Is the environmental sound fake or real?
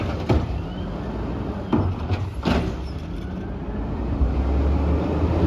real